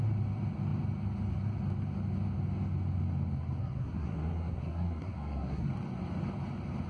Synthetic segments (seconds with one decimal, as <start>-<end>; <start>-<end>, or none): 3.6-5.7